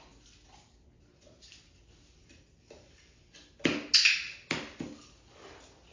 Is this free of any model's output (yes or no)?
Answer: yes